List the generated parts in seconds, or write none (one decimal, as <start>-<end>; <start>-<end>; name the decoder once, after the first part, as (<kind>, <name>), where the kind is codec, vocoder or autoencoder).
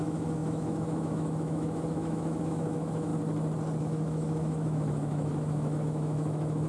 0.0-3.1 (autoencoder, DAC-VAE); 3.8-6.7